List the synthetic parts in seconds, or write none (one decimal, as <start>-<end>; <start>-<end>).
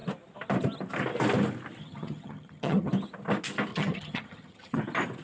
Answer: 1.8-2.9; 3.7-4.8